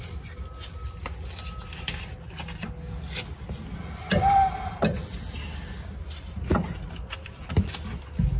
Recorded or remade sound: recorded